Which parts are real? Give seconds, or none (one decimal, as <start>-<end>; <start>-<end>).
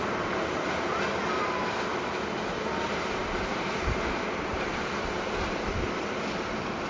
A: 0.0-1.9; 6.0-6.9